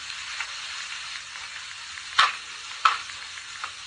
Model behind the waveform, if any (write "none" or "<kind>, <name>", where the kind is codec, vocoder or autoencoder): none